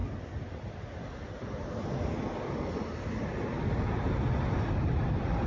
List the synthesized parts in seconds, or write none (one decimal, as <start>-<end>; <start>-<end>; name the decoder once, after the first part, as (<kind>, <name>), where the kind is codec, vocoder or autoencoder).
0.0-1.7 (vocoder, BigVGAN v2)